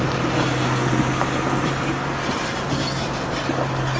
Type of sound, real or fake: real